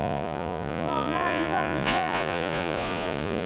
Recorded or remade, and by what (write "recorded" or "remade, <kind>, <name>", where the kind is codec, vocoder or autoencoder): remade, vocoder, Vocos